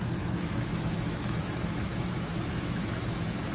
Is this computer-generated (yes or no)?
yes